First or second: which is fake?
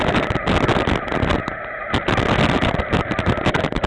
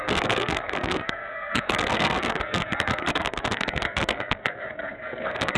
second